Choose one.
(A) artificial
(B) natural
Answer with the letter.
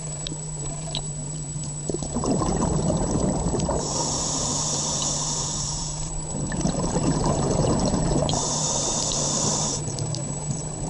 A